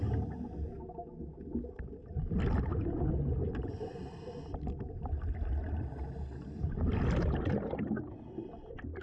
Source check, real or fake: real